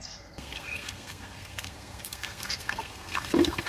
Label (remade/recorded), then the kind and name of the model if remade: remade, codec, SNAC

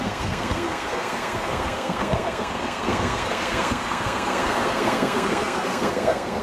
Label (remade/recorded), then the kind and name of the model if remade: remade, codec, SNAC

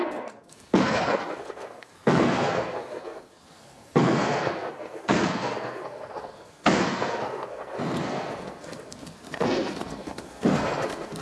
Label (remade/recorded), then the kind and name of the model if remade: remade, codec, SNAC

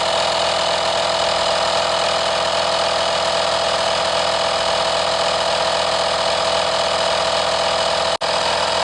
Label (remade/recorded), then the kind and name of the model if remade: recorded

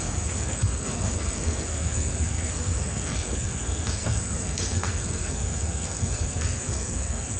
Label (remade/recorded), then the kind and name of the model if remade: remade, codec, SNAC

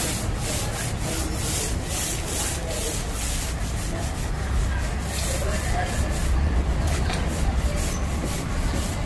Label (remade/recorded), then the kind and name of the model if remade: recorded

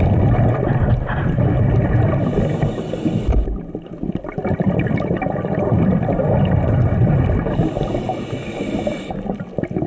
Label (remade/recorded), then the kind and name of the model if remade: recorded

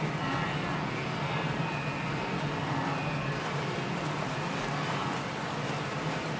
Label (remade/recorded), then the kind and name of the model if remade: recorded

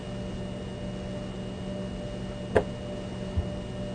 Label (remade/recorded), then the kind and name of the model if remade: recorded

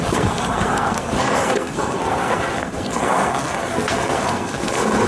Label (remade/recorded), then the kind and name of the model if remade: remade, codec, SNAC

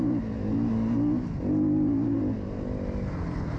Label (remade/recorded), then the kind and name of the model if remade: recorded